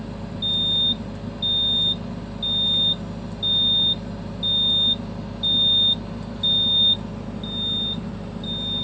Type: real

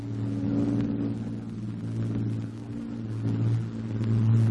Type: real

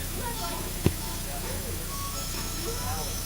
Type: fake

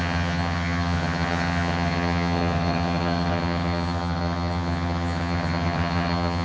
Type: fake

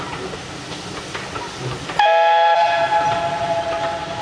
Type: real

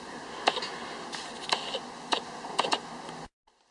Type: real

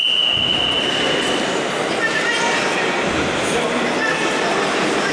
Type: real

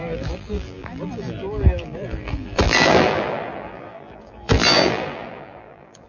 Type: fake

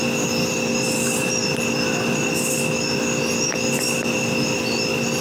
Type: real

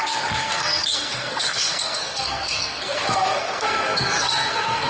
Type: fake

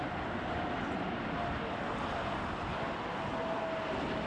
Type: real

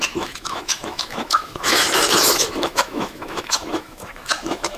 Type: fake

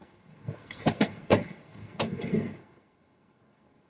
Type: fake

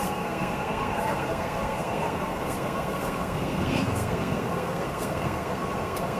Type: fake